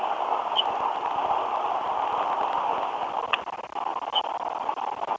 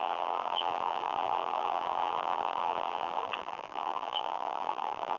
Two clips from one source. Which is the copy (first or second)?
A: second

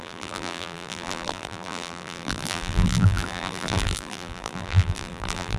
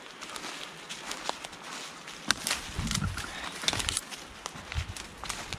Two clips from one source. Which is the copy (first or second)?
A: first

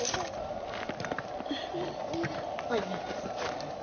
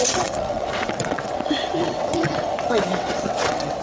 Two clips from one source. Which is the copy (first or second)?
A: second